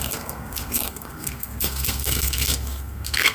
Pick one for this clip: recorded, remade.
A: remade